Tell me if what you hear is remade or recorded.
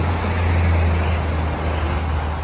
recorded